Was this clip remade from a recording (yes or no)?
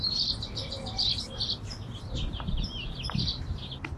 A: yes